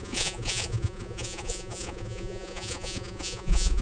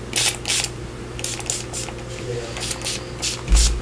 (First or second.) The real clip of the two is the second